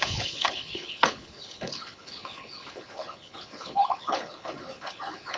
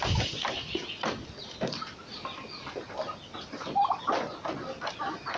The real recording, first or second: second